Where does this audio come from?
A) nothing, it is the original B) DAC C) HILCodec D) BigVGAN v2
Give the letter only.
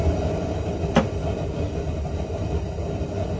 A